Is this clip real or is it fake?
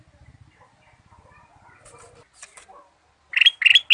real